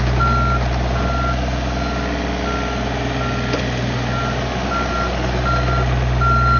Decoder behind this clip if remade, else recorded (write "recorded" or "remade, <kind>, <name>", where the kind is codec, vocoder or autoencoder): recorded